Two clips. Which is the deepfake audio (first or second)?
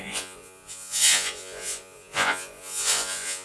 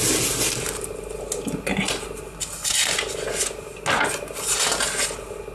first